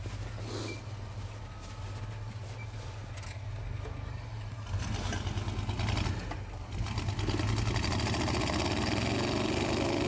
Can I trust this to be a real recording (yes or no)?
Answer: yes